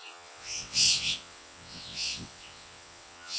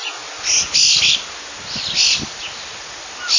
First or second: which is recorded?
second